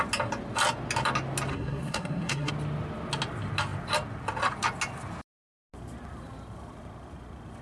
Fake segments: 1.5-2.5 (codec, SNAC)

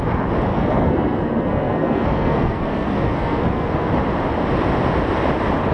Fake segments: 0.5-3.9 (codec, SNAC)